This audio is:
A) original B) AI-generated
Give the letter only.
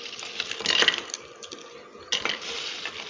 A